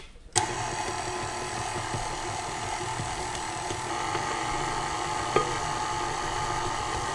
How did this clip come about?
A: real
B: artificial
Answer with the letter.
A